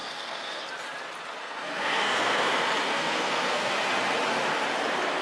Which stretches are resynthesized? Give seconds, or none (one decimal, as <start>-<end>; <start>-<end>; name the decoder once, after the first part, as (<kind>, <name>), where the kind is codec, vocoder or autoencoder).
0.0-0.6 (codec, SNAC); 1.4-2.5; 2.9-3.7